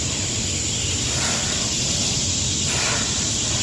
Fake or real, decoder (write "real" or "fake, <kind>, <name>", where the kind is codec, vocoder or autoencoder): real